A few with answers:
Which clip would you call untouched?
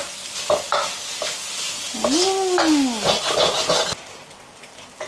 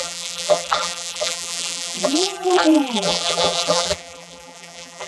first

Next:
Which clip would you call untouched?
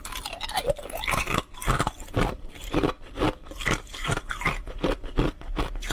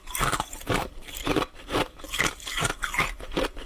first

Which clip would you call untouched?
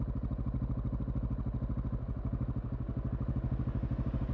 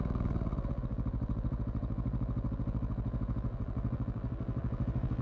first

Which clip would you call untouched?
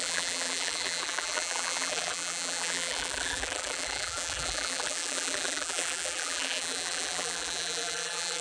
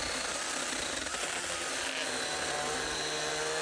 second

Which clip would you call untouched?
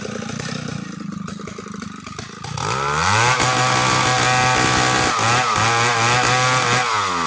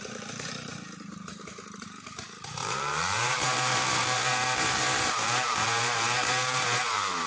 first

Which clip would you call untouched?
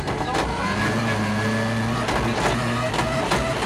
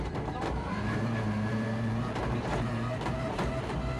first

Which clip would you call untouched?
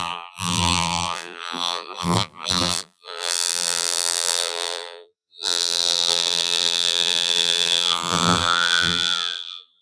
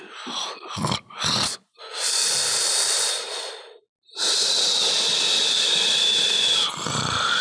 second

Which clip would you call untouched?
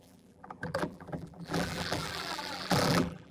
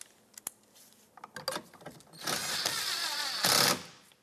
second